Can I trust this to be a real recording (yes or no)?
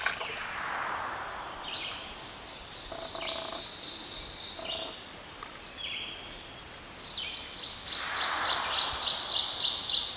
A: yes